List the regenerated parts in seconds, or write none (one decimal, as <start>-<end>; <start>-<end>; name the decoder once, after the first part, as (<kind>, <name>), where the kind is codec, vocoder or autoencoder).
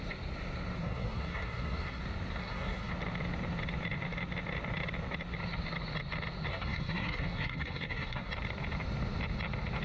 0.8-2.0 (codec, SNAC); 2.4-2.9; 6.5-8.3